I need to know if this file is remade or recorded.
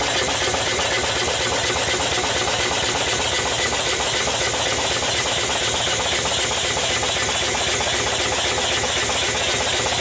recorded